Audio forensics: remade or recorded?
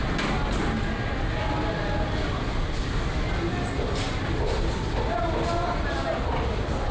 recorded